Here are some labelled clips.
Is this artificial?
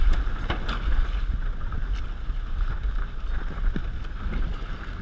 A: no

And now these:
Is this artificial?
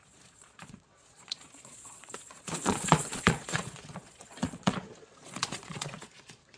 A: yes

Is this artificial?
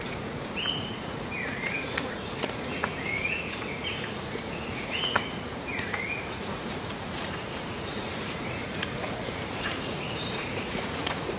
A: yes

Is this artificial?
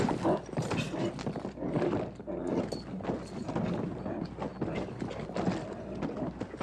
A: no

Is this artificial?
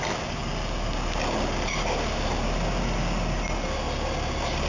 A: no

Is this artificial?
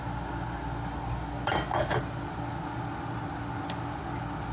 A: no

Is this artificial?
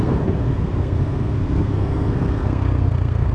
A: yes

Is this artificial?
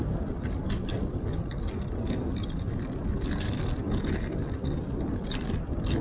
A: no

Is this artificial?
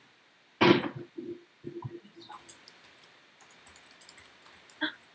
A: no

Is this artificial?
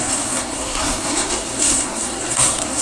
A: yes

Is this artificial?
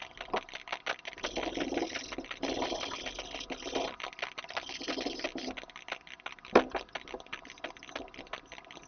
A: no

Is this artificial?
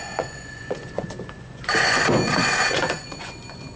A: yes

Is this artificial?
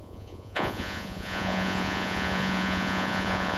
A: yes